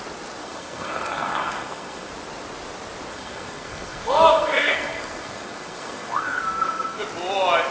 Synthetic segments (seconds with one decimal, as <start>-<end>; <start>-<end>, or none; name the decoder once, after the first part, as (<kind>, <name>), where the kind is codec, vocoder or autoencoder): 0.4-2.1 (codec, SNAC); 3.1-7.0